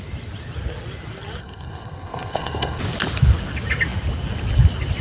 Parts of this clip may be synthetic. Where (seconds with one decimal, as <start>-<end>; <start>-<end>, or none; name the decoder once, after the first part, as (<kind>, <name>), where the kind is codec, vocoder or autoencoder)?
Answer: 1.4-2.8 (codec, SNAC)